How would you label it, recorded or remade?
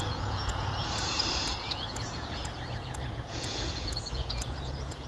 remade